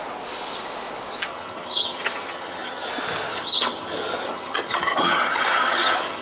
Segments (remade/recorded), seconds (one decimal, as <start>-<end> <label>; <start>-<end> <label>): 0.0-1.3 recorded; 1.3-2.9 remade; 2.9-3.3 recorded; 3.3-6.2 remade